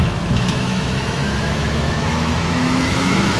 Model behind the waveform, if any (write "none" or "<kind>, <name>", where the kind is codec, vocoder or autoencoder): autoencoder, DAC-VAE